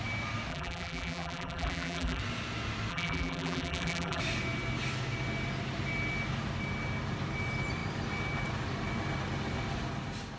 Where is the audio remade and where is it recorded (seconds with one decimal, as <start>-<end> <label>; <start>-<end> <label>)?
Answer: 0.0-0.5 recorded; 0.5-2.2 remade; 2.2-2.9 recorded; 2.9-4.2 remade; 4.2-10.4 recorded